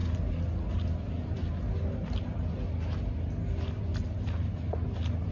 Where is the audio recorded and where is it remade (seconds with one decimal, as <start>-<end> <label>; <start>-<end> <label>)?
0.0-5.3 recorded